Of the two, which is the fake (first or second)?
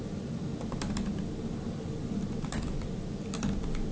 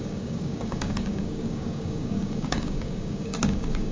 second